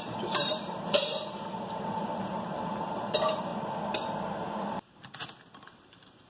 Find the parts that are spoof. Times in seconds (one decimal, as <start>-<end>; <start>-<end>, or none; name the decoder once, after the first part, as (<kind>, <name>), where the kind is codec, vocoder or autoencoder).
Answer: 0.0-3.5 (vocoder, BigVGAN v2); 4.3-6.3